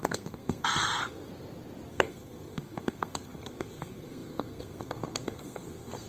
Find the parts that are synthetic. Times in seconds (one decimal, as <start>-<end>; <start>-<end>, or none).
0.0-1.3; 1.9-6.1